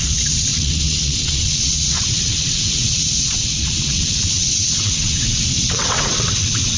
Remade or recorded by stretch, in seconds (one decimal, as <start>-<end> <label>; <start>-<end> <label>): 0.0-6.8 remade